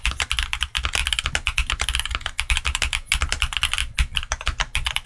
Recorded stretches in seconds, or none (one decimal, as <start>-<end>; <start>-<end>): 0.0-5.1